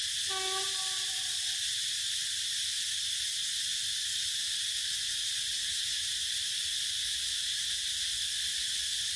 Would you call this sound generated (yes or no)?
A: no